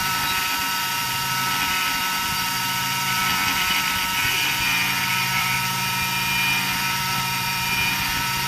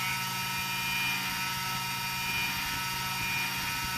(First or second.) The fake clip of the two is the first